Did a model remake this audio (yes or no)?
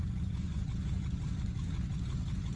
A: yes